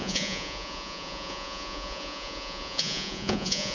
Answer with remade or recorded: remade